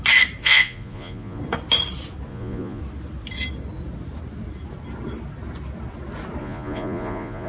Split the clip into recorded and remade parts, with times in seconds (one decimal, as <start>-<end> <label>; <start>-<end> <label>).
0.0-0.4 recorded; 0.4-1.4 remade; 1.4-2.3 recorded; 2.3-2.8 remade; 2.8-6.4 recorded; 6.4-7.5 remade